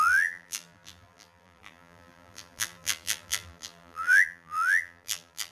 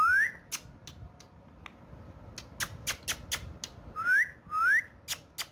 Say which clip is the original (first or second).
second